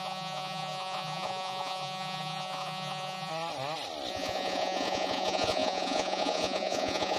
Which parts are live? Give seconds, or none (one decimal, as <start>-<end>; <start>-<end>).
3.3-4.1